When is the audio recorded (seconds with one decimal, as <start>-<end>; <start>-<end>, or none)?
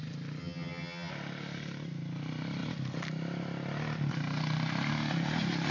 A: 0.0-0.4; 1.1-5.7